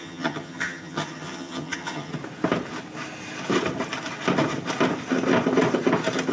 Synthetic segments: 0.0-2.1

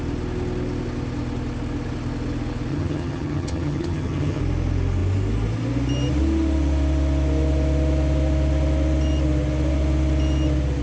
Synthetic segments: 2.7-4.4

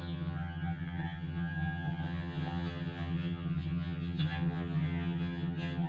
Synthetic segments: 0.0-5.9

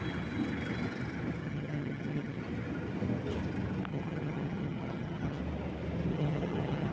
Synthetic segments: 1.4-2.4; 3.9-5.4; 6.1-6.9

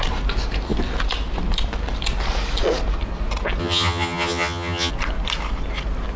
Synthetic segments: 3.6-4.9

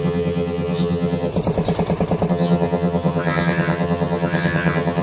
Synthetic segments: 0.0-1.3; 2.3-5.0

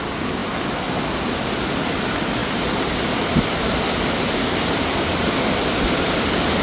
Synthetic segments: none